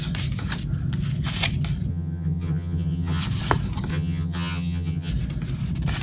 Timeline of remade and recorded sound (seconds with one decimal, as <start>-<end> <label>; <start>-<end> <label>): 0.0-1.9 recorded; 1.9-3.2 remade; 3.2-3.9 recorded; 3.9-5.1 remade; 5.1-6.0 recorded